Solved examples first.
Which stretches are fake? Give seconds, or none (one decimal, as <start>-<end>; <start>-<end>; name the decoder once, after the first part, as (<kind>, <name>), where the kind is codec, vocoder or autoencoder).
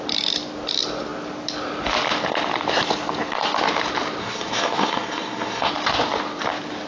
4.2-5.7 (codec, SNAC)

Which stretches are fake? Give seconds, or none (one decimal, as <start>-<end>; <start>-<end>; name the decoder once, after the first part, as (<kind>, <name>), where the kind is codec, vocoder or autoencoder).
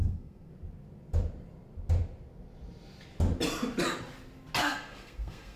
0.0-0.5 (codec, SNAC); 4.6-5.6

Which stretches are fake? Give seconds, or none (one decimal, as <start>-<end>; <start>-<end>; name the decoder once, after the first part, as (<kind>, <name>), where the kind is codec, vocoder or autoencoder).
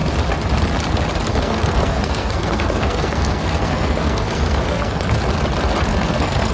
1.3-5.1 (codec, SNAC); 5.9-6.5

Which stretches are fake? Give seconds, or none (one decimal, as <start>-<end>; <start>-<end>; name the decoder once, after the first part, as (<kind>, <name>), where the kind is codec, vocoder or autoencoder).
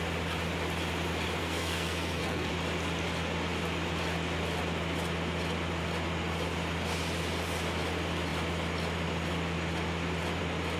1.4-2.5 (codec, SNAC)